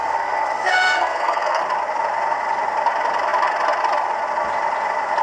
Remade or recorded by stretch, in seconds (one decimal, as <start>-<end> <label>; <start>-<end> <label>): 0.0-1.6 remade; 1.6-5.2 recorded